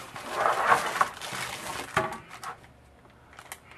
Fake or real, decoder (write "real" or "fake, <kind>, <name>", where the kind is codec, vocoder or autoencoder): real